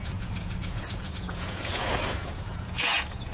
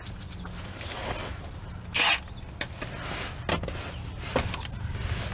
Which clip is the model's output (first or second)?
first